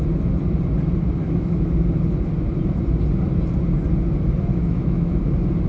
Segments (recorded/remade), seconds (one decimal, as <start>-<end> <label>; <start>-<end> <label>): 0.0-1.2 recorded; 1.2-1.7 remade; 1.7-4.5 recorded; 4.5-5.2 remade; 5.2-5.7 recorded